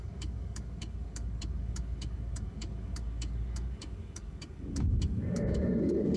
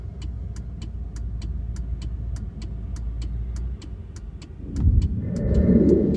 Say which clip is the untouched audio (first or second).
second